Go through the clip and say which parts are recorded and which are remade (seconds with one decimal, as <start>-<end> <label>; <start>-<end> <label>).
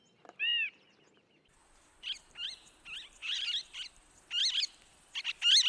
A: 0.0-1.6 recorded; 1.6-2.2 remade; 2.2-3.2 recorded; 3.2-4.3 remade; 4.3-5.7 recorded